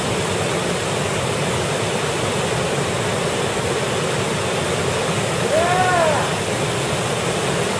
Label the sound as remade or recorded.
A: recorded